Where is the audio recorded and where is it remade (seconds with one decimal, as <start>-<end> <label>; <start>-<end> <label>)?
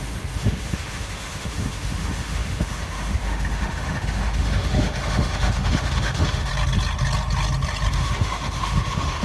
0.0-6.5 remade; 6.5-7.9 recorded; 7.9-9.2 remade